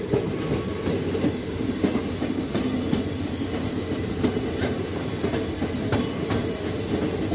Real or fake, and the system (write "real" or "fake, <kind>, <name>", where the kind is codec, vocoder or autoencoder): real